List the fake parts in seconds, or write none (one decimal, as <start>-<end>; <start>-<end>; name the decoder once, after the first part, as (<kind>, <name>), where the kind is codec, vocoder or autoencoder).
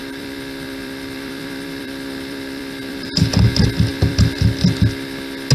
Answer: 0.0-3.3 (vocoder, BigVGAN v2); 3.9-4.8